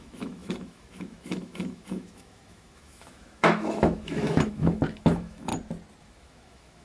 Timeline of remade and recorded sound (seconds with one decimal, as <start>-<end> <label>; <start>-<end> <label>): 0.0-5.5 remade; 5.5-6.0 recorded; 6.0-6.8 remade